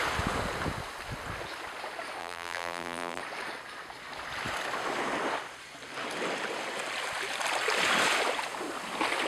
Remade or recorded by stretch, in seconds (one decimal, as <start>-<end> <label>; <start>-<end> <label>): 0.0-2.2 recorded; 2.2-3.2 remade; 3.2-9.3 recorded